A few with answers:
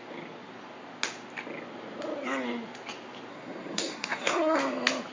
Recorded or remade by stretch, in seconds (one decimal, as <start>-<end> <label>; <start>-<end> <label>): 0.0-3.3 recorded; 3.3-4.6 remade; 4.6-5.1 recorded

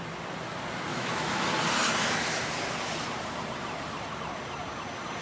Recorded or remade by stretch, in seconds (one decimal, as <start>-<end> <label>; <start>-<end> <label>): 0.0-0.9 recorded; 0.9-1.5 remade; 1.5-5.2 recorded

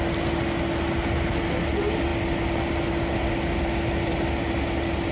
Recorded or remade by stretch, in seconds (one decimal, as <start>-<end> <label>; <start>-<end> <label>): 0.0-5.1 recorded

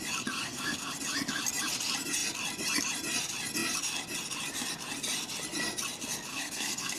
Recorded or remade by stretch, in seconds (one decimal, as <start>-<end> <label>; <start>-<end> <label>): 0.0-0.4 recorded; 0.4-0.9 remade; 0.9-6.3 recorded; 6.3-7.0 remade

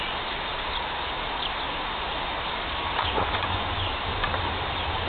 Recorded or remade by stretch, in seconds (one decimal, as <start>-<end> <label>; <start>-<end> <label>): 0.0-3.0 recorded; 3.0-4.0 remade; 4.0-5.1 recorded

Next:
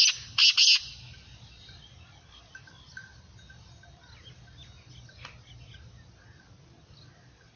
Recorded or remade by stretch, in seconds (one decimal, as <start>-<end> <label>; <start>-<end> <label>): 0.0-7.6 recorded